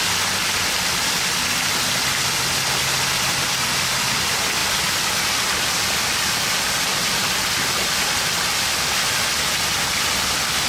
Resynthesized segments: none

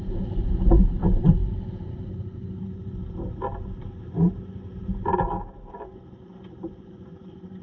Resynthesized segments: 0.0-7.6

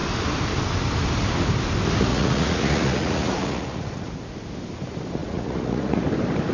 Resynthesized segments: 2.1-4.1; 5.2-6.0

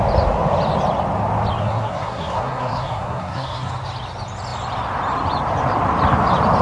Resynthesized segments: 1.6-3.7

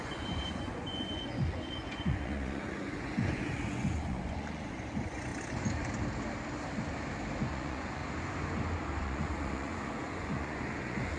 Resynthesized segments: 0.0-5.3; 7.4-8.0; 9.0-11.2

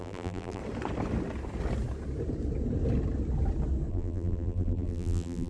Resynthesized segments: 0.0-0.6; 3.9-5.5

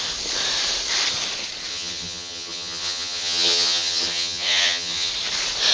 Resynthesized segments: 1.7-5.1